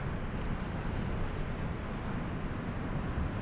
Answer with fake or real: real